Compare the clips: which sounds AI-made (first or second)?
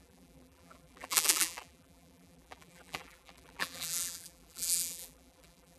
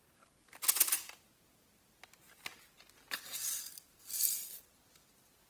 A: first